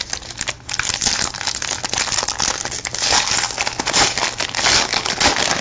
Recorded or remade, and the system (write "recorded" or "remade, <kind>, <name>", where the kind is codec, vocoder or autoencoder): recorded